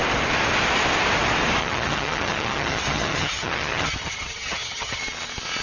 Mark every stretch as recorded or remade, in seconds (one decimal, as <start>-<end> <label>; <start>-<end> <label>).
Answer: 0.0-1.6 recorded; 1.6-5.0 remade; 5.0-5.6 recorded

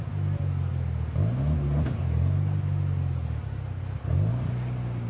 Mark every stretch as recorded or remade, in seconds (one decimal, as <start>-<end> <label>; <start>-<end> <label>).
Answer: 0.0-5.1 recorded

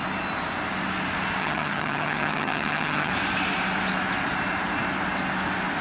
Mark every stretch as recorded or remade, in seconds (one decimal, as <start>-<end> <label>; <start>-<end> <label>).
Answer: 0.0-1.4 recorded; 1.4-3.1 remade; 3.1-5.8 recorded

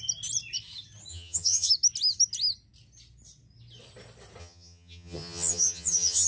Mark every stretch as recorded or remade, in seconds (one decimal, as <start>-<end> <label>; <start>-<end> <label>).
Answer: 0.0-1.1 recorded; 1.1-1.7 remade; 1.7-4.4 recorded; 4.4-6.3 remade

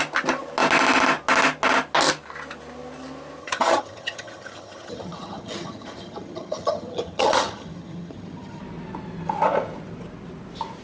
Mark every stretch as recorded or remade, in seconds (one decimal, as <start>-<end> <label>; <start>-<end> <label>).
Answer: 0.0-3.4 recorded; 3.4-8.6 remade; 8.6-10.8 recorded

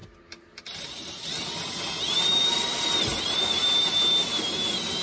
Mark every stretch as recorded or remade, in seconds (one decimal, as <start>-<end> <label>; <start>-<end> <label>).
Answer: 0.0-5.0 recorded

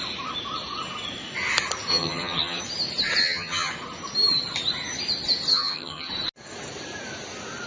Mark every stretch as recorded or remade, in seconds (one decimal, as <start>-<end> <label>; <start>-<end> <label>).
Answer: 0.0-1.9 recorded; 1.9-2.6 remade; 2.6-3.2 recorded; 3.2-3.7 remade; 3.7-5.5 recorded; 5.5-6.1 remade; 6.1-7.7 recorded